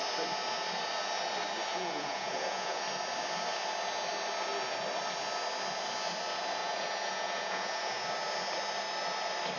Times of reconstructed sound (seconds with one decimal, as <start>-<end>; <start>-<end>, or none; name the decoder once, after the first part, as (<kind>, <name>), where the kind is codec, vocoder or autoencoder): 1.7-2.8 (vocoder, Vocos); 6.6-8.0